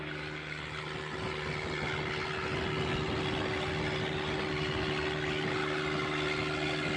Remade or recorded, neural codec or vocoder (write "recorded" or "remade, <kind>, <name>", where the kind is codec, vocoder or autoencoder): recorded